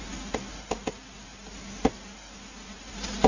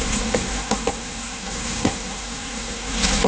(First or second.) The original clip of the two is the first